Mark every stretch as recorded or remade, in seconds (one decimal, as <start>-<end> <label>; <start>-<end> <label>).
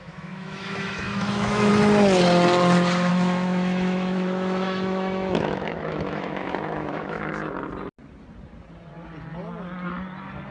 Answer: 0.0-1.7 remade; 1.7-3.1 recorded; 3.1-7.3 remade; 7.3-10.5 recorded